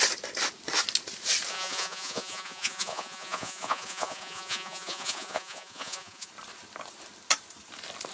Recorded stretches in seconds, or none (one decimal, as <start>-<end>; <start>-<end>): 0.0-1.5; 6.3-8.1